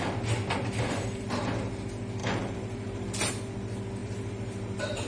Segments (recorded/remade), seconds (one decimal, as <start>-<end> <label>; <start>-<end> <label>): 0.0-2.2 recorded; 2.2-3.3 remade; 3.3-4.0 recorded; 4.0-5.1 remade